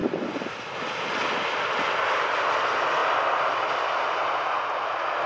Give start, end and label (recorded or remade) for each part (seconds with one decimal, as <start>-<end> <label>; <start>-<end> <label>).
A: 0.0-5.3 recorded

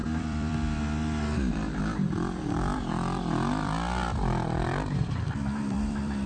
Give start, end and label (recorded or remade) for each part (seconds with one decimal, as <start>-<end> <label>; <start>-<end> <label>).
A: 0.0-6.3 remade

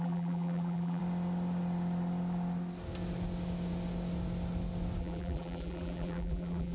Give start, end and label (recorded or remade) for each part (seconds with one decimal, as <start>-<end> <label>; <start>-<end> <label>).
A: 0.0-1.0 remade; 1.0-5.0 recorded; 5.0-6.7 remade

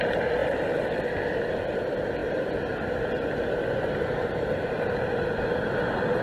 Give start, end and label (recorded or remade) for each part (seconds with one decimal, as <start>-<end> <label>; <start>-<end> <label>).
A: 0.0-0.4 recorded; 0.4-1.1 remade; 1.1-6.2 recorded

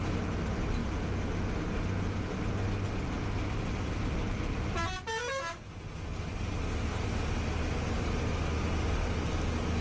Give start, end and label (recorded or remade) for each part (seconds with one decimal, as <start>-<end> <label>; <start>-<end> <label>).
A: 0.0-9.8 recorded

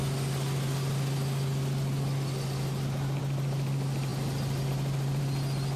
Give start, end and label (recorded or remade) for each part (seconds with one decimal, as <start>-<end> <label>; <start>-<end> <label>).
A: 0.0-5.8 recorded

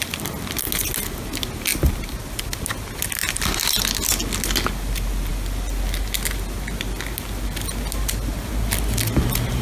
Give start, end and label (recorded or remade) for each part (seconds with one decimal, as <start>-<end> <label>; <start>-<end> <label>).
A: 0.0-1.7 recorded; 1.7-2.4 remade; 2.4-9.6 recorded

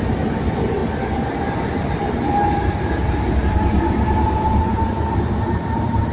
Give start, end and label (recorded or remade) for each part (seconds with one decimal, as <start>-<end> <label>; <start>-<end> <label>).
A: 0.0-0.8 remade; 0.8-1.3 recorded; 1.3-6.1 remade